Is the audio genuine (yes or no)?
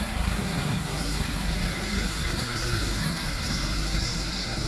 no